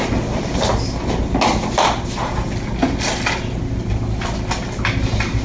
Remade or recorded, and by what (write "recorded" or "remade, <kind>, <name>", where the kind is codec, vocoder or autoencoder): recorded